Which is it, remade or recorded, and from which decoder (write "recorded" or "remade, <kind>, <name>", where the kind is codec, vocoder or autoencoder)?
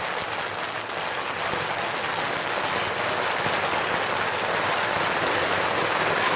recorded